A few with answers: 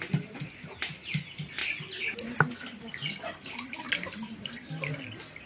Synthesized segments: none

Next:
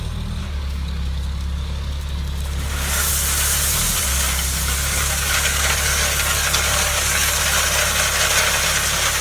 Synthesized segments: 0.4-3.1 (codec, DAC); 4.1-7.4

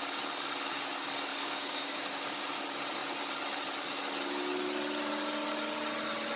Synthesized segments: 1.3-2.4 (codec, DAC)

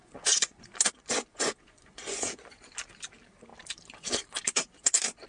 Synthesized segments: 0.0-0.8 (vocoder, Vocos); 1.3-2.7

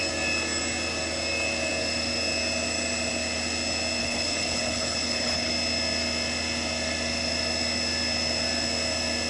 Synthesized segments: 4.0-5.5 (codec, HILCodec)

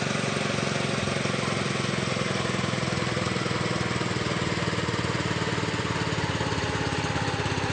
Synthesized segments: none